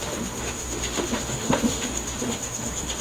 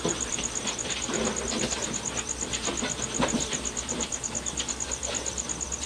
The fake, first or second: first